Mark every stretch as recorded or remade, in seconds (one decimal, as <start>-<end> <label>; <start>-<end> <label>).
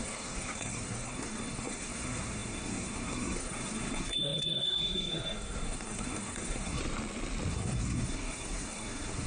0.0-6.8 remade; 6.8-7.5 recorded; 7.5-9.3 remade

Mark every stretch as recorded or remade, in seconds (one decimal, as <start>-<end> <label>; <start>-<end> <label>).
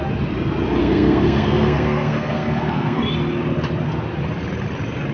0.0-0.8 recorded; 0.8-3.0 remade; 3.0-5.1 recorded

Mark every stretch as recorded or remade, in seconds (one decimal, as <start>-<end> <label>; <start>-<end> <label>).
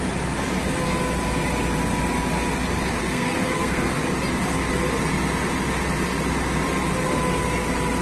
0.0-3.0 recorded; 3.0-4.0 remade; 4.0-8.0 recorded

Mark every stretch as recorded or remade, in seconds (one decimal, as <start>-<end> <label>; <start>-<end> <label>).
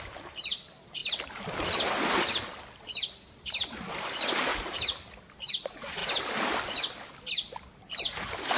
0.0-8.6 recorded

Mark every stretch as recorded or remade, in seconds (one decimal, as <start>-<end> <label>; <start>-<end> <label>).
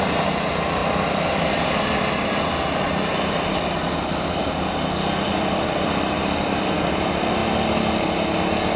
0.0-8.8 recorded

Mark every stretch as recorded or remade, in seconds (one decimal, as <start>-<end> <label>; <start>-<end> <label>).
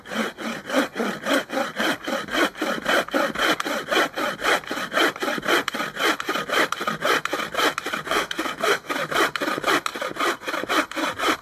0.0-8.1 recorded; 8.1-8.9 remade; 8.9-11.4 recorded